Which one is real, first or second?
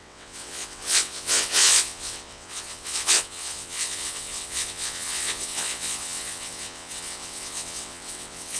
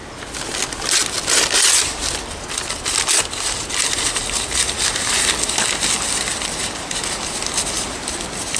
second